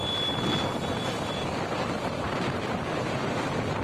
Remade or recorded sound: recorded